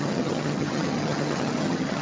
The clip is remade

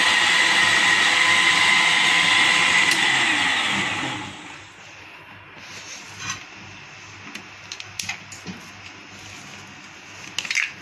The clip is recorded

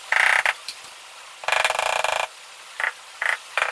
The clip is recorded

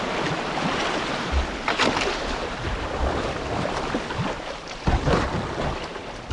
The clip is remade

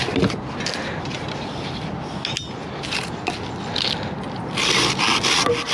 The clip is recorded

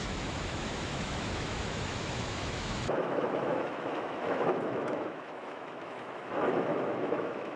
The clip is remade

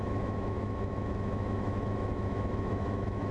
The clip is remade